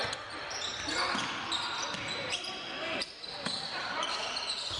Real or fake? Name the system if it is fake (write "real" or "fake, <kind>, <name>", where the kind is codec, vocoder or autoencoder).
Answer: fake, vocoder, BigVGAN v2